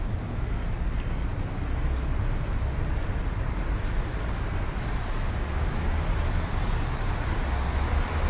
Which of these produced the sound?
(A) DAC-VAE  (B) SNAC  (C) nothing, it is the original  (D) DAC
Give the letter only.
C